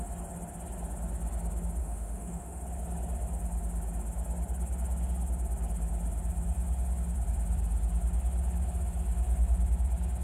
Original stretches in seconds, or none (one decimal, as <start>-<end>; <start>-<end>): 0.0-1.8; 2.6-10.2